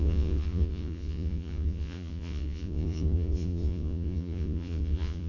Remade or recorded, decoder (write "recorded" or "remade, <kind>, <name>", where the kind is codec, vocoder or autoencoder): remade, vocoder, Vocos